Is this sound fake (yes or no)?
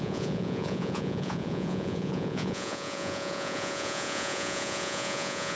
yes